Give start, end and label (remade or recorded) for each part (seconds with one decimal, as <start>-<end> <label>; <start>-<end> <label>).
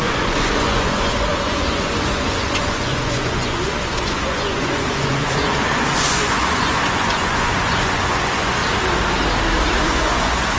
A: 0.0-8.6 remade; 8.6-9.8 recorded; 9.8-10.6 remade